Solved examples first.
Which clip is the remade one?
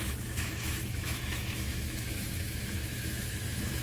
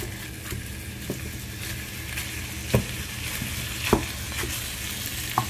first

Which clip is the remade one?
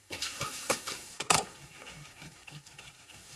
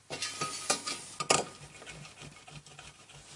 first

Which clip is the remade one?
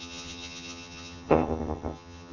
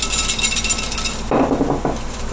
first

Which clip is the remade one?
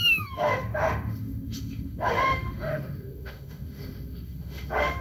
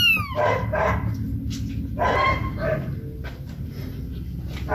first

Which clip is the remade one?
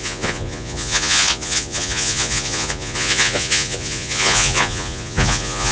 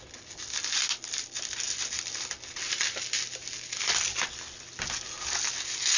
first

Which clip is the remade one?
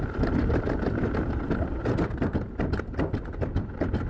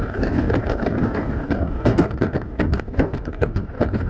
second